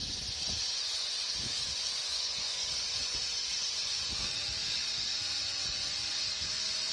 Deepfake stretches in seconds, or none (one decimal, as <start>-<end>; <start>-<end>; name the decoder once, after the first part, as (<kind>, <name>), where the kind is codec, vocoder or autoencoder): 0.0-4.1 (vocoder, Vocos); 5.1-6.9